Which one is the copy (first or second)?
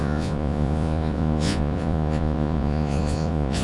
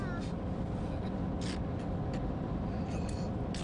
first